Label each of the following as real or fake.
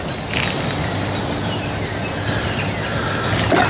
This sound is real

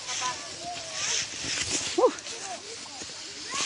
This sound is real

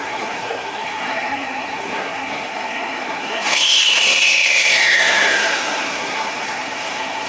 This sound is fake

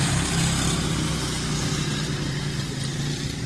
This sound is real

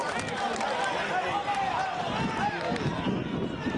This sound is real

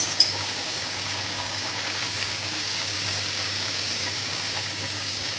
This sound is fake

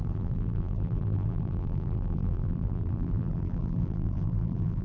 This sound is fake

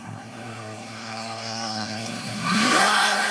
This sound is fake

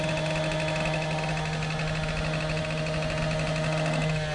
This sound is real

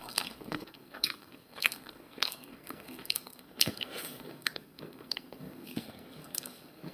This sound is fake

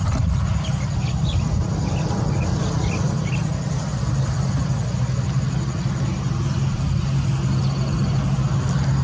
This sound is real